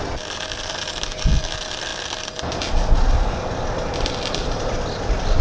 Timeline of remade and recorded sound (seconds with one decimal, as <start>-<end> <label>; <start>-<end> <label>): 0.0-5.4 recorded